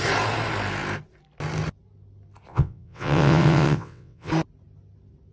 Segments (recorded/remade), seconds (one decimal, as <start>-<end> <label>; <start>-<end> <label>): 0.0-2.5 recorded; 2.5-4.3 remade; 4.3-5.3 recorded